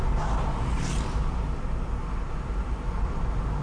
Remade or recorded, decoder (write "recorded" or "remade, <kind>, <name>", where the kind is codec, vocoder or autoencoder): recorded